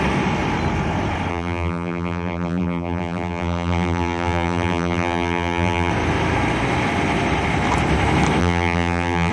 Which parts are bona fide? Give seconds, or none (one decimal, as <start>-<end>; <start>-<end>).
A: 0.0-1.3; 5.9-8.4